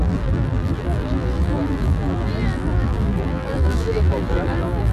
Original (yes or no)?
no